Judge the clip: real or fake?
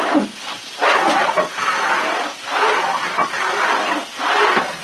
real